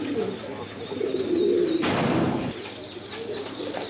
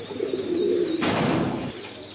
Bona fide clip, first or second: first